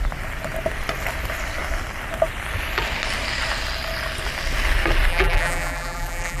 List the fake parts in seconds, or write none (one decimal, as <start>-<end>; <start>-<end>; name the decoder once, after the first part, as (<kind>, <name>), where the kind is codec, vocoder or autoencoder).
5.1-6.4 (vocoder, BigVGAN v2)